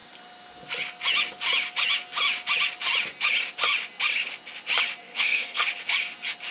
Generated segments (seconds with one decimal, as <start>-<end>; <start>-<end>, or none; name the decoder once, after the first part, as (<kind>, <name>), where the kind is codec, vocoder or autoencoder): 5.0-5.6 (codec, SNAC)